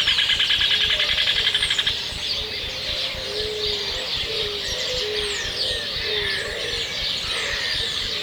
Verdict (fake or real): real